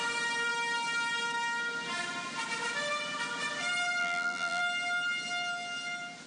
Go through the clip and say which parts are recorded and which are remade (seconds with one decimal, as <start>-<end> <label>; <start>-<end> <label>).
0.0-4.0 recorded; 4.0-4.6 remade; 4.6-6.3 recorded